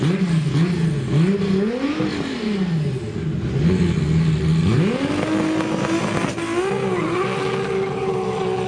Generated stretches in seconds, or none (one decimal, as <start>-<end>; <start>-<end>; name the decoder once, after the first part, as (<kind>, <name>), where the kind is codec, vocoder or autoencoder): none